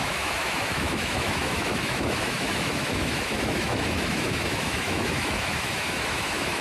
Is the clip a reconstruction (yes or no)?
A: yes